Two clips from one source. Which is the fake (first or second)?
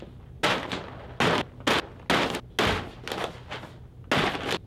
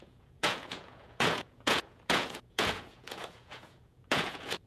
second